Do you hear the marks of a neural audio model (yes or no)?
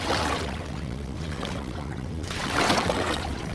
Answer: yes